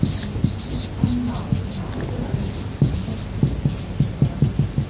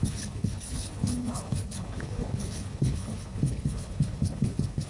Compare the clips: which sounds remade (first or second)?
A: second